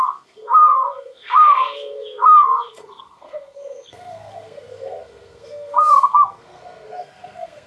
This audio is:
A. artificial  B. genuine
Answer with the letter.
A